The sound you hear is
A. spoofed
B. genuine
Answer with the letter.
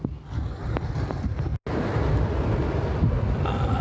B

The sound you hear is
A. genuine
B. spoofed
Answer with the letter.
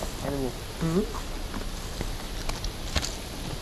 A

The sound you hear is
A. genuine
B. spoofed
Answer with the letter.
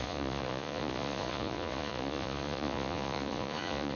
B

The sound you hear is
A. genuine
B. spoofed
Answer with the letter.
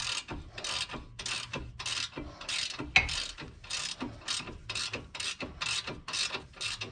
A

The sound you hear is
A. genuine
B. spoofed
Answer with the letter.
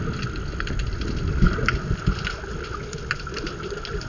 A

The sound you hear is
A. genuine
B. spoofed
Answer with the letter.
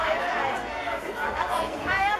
B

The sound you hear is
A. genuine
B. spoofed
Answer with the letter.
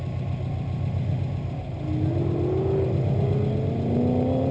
A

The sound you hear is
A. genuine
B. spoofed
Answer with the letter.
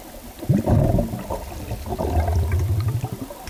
A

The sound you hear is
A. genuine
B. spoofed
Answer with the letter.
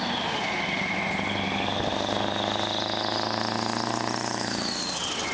A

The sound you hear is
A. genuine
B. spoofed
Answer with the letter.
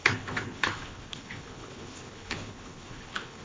B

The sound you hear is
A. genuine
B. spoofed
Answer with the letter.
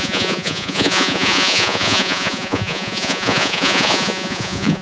B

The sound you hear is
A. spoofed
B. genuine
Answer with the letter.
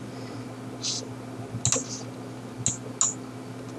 B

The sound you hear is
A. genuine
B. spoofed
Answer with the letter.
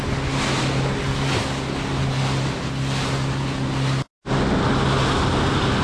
A